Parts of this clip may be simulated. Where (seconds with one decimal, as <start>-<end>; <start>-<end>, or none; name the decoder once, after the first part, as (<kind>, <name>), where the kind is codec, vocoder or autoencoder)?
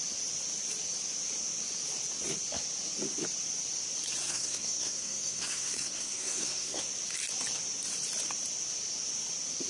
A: 4.2-6.8 (codec, SNAC)